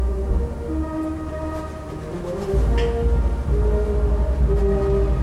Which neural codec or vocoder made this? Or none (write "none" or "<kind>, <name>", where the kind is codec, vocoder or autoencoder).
none